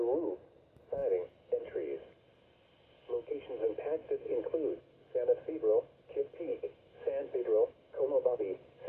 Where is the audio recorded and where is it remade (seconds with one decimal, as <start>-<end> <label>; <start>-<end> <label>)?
0.0-8.9 recorded